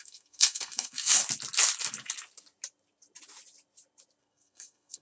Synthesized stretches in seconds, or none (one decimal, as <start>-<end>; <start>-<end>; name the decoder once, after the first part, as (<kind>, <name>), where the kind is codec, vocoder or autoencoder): 0.0-1.2 (codec, SNAC); 4.2-5.0